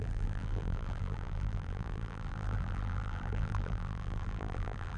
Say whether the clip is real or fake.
fake